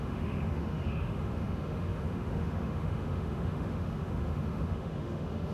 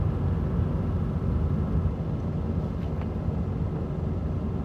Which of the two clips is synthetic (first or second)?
first